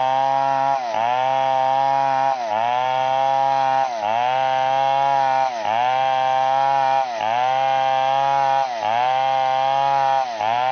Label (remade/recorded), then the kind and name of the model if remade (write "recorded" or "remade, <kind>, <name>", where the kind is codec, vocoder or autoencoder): recorded